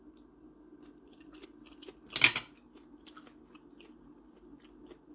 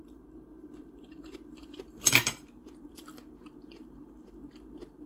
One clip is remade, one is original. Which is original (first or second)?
first